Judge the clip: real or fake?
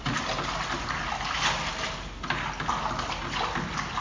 real